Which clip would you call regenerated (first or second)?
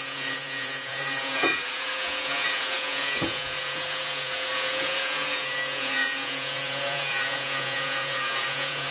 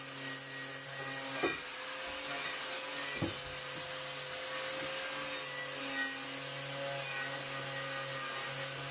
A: first